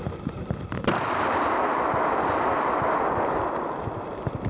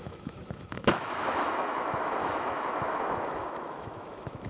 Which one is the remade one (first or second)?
second